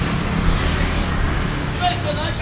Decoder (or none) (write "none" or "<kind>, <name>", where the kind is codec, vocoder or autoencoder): none